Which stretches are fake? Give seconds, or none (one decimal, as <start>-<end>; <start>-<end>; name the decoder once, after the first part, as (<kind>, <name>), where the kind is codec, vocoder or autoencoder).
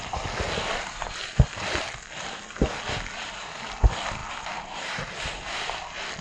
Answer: none